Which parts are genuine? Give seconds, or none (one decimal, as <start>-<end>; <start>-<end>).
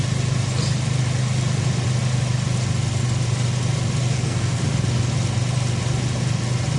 0.0-4.1; 4.6-6.8